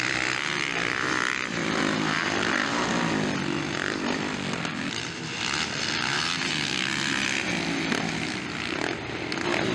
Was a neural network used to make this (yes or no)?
no